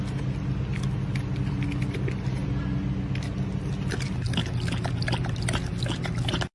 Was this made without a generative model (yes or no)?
yes